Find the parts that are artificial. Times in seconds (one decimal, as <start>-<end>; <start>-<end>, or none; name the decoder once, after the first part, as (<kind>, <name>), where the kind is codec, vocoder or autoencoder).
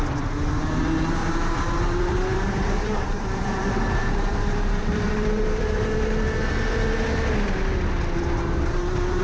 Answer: 1.2-1.7 (vocoder, BigVGAN v2); 2.3-5.6